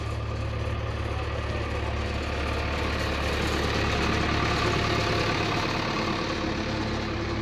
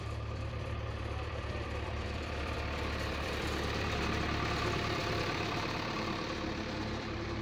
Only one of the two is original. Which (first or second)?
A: first